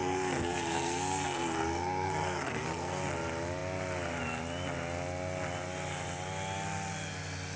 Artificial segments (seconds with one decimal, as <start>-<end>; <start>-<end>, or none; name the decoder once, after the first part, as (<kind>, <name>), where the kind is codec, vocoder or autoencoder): 0.0-3.0 (codec, SNAC)

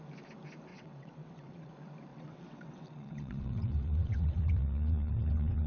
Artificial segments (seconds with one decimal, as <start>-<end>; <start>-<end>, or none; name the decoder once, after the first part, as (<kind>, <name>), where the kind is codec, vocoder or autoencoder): 0.7-1.7 (vocoder, WaveNeXt); 2.1-5.7

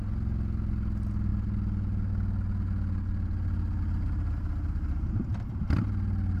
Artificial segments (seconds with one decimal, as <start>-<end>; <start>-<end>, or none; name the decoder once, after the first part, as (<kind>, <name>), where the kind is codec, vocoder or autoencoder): none

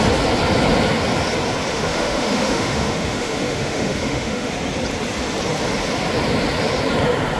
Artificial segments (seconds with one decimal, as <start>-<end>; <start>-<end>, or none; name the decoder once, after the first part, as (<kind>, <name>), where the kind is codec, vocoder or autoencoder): 1.7-4.5 (autoencoder, DAC-VAE)